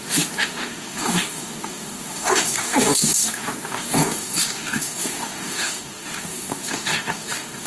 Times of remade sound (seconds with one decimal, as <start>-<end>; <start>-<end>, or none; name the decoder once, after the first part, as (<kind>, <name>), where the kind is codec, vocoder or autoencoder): 0.0-7.7 (codec, DAC)